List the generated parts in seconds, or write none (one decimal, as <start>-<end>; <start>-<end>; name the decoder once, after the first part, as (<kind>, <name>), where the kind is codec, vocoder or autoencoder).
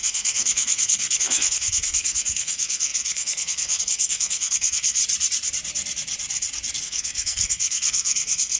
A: 0.0-5.0 (codec, SNAC); 6.8-8.6